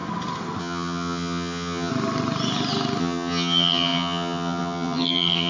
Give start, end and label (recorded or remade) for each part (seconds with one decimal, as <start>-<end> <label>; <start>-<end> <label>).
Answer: 0.0-0.6 recorded; 0.6-1.9 remade; 1.9-3.0 recorded; 3.0-5.5 remade